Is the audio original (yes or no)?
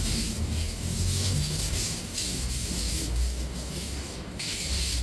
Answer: no